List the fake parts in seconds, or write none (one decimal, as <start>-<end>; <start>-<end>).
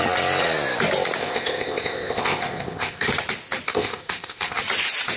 1.2-3.1; 3.7-4.6